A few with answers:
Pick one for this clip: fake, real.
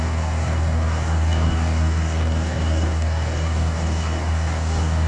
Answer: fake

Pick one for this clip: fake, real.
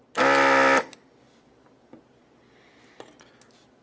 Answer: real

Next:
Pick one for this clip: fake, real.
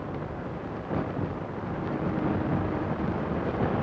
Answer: fake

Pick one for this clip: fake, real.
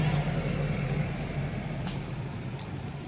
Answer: real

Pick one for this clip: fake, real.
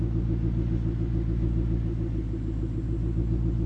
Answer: real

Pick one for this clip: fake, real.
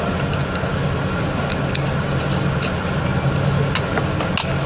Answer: real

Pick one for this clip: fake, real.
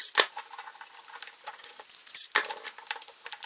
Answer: real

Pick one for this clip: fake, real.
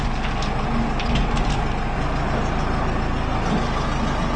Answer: real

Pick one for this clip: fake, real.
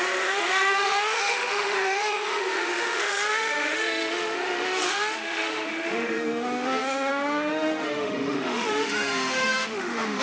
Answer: fake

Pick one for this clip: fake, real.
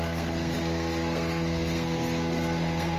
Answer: fake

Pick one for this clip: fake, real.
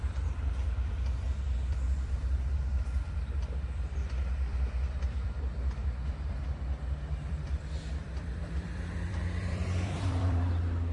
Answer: fake